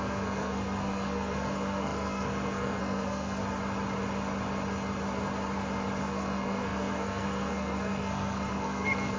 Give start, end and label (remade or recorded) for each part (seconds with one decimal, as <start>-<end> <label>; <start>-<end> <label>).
0.0-3.4 remade; 3.4-6.0 recorded; 6.0-9.2 remade